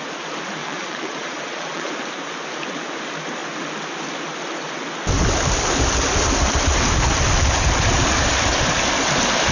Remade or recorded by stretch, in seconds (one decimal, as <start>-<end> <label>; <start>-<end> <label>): 0.0-0.6 recorded; 0.6-1.9 remade; 1.9-9.5 recorded